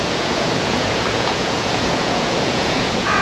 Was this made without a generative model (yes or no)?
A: no